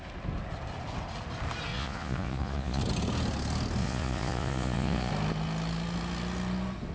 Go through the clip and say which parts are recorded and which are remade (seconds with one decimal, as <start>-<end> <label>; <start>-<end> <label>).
0.0-1.7 recorded; 1.7-2.8 remade; 2.8-3.8 recorded; 3.8-5.1 remade; 5.1-6.9 recorded